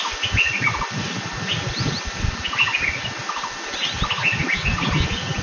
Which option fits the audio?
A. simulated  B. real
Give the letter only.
B